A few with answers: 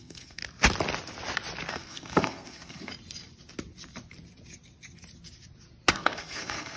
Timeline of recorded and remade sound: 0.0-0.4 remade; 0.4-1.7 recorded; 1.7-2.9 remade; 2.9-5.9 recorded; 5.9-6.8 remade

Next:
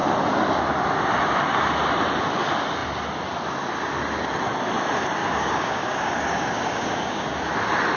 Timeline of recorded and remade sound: 0.0-5.2 recorded; 5.2-7.5 remade; 7.5-8.0 recorded

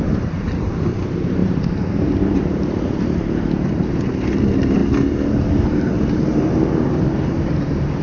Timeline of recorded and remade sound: 0.0-4.8 remade; 4.8-5.5 recorded; 5.5-8.0 remade

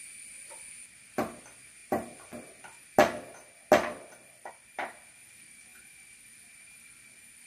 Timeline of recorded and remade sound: 0.0-7.5 recorded